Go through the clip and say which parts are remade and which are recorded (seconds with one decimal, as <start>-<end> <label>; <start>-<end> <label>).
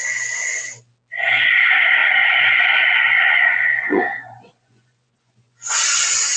0.0-2.0 recorded; 2.0-5.8 remade; 5.8-6.4 recorded